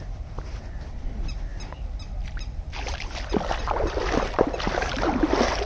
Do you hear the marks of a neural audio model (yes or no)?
no